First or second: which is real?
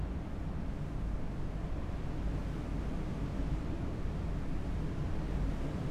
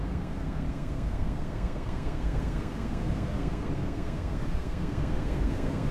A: first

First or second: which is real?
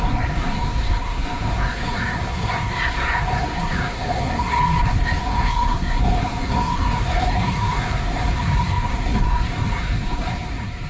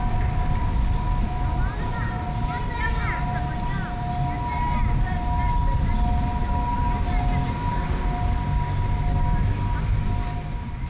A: second